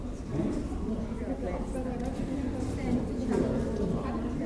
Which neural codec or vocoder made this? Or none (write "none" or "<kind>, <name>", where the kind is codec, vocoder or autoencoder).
none